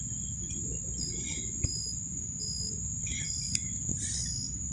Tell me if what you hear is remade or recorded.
recorded